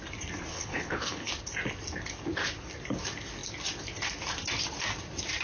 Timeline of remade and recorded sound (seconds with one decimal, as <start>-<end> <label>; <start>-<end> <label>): 0.0-0.5 recorded; 0.5-1.3 remade; 1.3-5.4 recorded